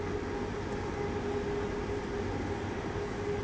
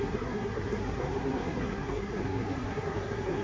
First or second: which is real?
first